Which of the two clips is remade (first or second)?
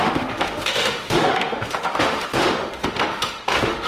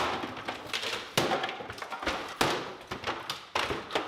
first